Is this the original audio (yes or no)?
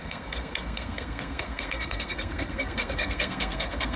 no